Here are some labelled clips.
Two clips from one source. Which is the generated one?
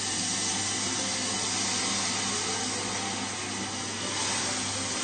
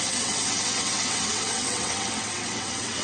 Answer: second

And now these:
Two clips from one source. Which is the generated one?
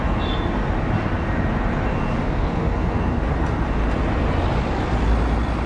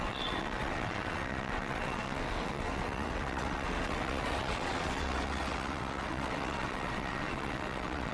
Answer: second